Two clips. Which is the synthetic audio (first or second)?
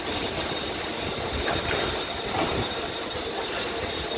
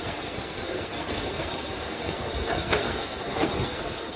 second